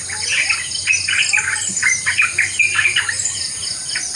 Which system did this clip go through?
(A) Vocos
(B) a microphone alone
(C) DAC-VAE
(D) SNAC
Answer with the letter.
B